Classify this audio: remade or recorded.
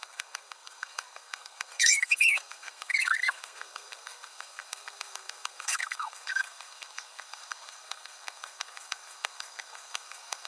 remade